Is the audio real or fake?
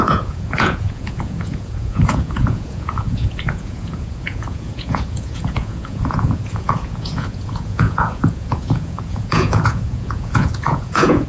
fake